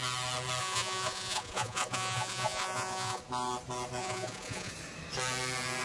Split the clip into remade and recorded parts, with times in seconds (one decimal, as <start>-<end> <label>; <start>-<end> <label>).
0.0-0.6 recorded; 0.6-3.2 remade; 3.2-4.0 recorded; 4.0-4.7 remade; 4.7-5.8 recorded